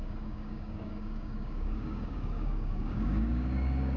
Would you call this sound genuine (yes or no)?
no